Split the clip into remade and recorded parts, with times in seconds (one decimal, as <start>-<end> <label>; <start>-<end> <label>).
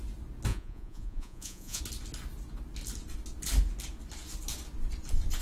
0.0-0.5 recorded; 0.5-1.8 remade; 1.8-5.4 recorded